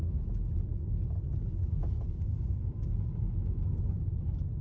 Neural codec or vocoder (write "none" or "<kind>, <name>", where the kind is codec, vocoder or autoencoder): none